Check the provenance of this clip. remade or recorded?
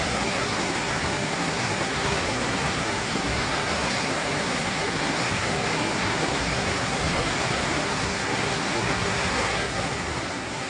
remade